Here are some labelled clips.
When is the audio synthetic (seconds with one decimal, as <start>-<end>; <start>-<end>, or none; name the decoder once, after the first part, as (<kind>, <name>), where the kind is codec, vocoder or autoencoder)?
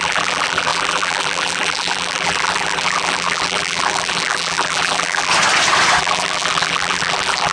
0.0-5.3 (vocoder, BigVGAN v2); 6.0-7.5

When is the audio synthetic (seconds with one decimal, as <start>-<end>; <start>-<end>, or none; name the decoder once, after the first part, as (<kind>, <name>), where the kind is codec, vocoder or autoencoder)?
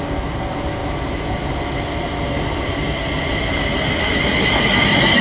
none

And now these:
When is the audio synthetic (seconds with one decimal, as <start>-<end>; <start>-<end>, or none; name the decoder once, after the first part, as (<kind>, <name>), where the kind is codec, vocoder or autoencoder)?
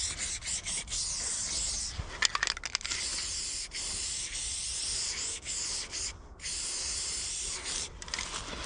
0.0-0.9 (vocoder, BigVGAN v2)